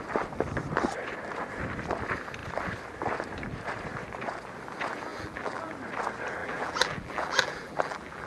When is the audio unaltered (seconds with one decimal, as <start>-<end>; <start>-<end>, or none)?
0.0-5.1; 5.7-6.4